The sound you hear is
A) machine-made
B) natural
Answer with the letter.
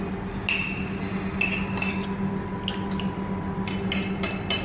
B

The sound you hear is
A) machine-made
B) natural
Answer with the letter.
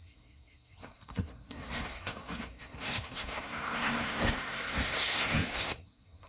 A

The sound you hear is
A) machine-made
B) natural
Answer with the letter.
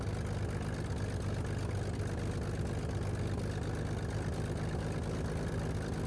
B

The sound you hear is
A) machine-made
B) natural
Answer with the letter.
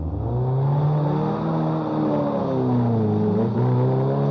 B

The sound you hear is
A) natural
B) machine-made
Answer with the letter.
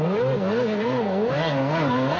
B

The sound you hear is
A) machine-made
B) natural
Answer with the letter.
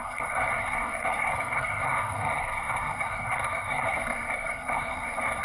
A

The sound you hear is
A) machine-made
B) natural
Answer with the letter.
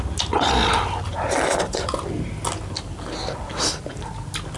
B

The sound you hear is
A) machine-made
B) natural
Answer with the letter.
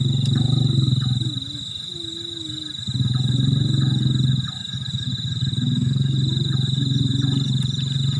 B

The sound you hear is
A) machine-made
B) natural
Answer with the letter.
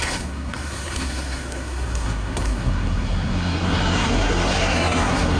A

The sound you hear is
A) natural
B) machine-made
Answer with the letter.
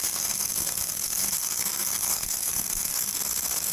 B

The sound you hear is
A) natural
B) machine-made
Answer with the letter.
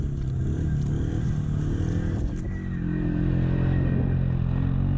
A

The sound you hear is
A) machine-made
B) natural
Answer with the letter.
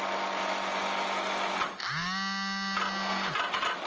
B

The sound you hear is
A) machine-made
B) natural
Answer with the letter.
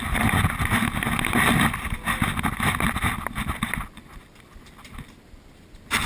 B